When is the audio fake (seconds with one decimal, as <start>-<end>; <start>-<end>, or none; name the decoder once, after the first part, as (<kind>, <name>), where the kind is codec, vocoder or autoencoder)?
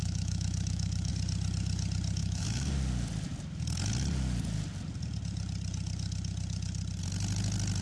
0.0-1.1 (autoencoder, DAC-VAE); 2.2-2.7